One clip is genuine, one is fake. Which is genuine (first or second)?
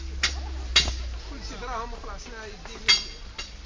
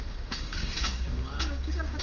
first